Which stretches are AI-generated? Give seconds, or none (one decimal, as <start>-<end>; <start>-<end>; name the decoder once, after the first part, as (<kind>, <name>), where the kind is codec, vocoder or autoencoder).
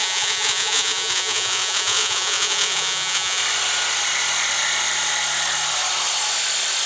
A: 0.0-3.4 (vocoder, Vocos)